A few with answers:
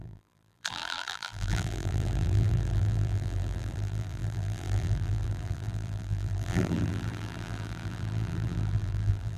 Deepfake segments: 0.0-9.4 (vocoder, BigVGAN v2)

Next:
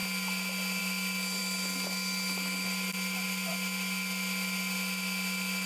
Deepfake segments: none

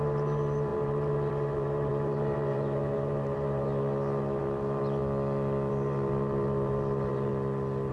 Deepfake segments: 0.0-5.0 (vocoder, BigVGAN v2); 5.7-7.3

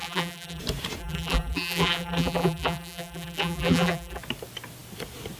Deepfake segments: 0.0-0.6 (vocoder, BigVGAN v2); 1.0-4.2

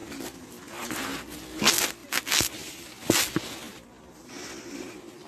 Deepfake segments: none

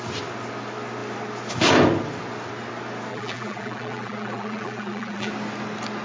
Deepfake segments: 3.1-5.3 (vocoder, BigVGAN v2)

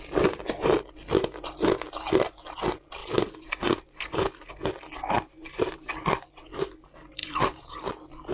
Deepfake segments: 3.0-4.5 (vocoder, BigVGAN v2); 5.4-5.9; 7.2-7.9

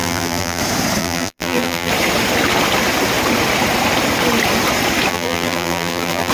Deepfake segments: 0.0-0.6 (vocoder, BigVGAN v2); 1.0-1.9; 5.1-6.3